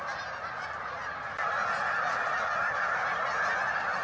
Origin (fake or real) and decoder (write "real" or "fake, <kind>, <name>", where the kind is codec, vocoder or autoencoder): real